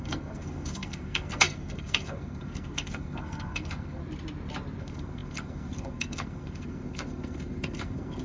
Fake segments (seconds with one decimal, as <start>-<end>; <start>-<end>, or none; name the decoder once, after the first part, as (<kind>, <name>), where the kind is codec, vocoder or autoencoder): 0.0-4.0 (codec, SNAC); 4.8-8.2